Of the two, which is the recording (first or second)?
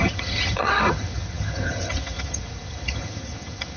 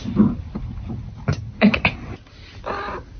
second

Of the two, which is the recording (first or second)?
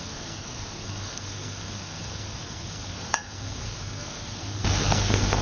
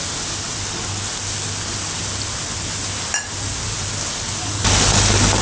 second